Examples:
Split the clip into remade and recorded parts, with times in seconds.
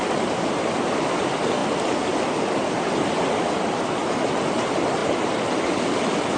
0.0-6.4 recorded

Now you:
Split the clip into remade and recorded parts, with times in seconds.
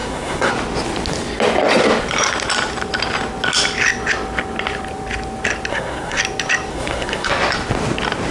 0.0-0.5 remade; 0.5-5.7 recorded; 5.7-6.2 remade; 6.2-6.7 recorded; 6.7-7.3 remade; 7.3-8.3 recorded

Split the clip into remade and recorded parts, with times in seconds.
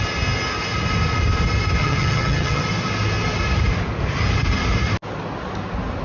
0.0-1.8 recorded; 1.8-2.6 remade; 2.6-6.0 recorded